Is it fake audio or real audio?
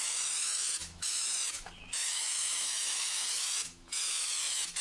fake